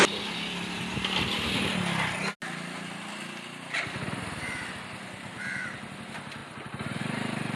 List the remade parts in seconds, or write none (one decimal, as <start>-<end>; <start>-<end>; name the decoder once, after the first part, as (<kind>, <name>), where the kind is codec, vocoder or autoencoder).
none